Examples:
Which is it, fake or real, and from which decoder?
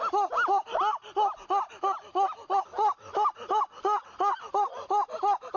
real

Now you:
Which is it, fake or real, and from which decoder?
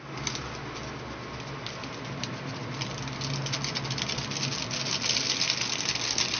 real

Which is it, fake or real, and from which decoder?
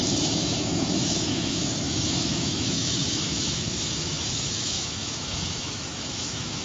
fake, autoencoder, DAC-VAE